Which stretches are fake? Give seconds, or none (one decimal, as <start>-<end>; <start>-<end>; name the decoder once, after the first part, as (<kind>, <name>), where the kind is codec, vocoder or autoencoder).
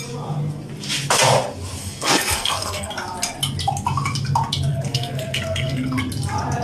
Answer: 1.8-2.9 (codec, SNAC); 4.7-6.0